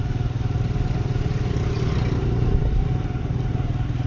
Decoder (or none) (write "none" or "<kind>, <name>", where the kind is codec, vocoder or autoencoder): none